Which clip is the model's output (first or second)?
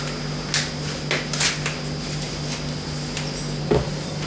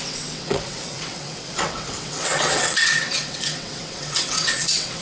second